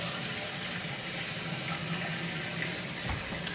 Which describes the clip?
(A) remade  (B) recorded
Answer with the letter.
B